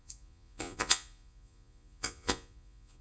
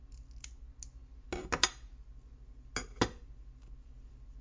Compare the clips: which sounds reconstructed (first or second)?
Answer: first